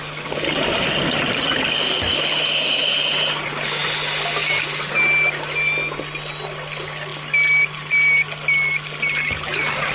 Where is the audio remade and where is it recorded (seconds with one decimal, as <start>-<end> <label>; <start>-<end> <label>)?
0.0-9.9 recorded